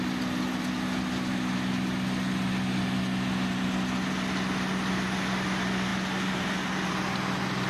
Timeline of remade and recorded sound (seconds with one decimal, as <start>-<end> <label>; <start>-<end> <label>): 0.0-7.7 recorded